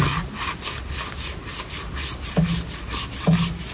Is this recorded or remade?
recorded